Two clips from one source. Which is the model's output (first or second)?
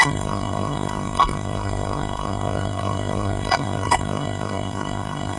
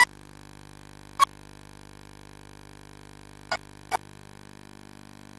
first